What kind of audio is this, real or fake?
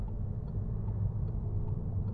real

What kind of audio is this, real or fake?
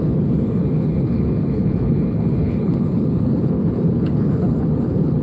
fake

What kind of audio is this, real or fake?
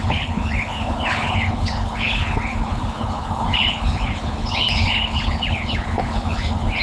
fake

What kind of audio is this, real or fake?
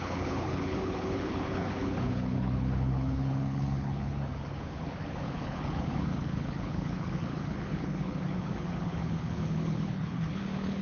fake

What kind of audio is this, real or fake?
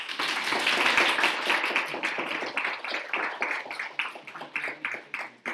real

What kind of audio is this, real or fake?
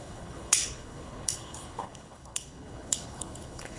fake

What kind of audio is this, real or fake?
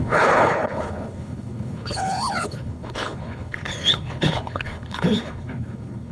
fake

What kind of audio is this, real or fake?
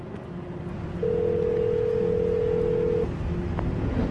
real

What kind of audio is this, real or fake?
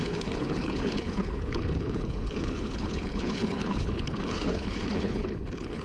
fake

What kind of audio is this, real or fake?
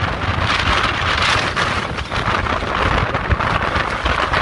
real